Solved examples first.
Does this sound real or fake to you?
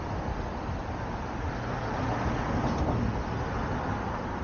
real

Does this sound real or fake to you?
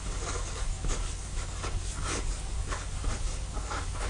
fake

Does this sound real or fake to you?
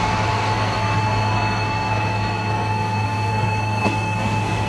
fake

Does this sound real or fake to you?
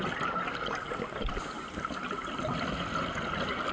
real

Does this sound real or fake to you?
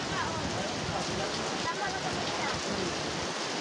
real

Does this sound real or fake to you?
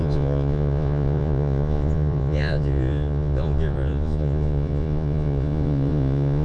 fake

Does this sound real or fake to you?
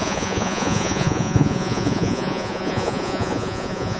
fake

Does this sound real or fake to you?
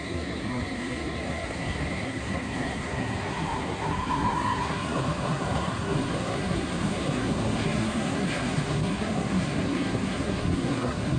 fake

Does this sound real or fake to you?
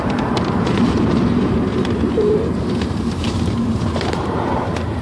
fake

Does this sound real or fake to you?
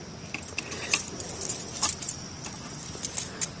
real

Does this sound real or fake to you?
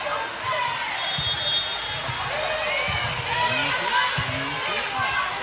real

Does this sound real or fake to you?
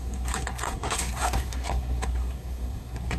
fake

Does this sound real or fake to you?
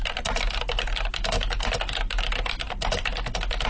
real